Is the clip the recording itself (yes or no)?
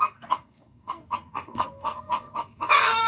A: no